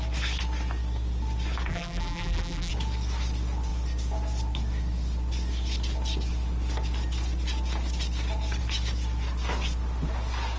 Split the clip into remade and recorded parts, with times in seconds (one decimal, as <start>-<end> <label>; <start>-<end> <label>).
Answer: 0.0-1.7 recorded; 1.7-2.7 remade; 2.7-10.6 recorded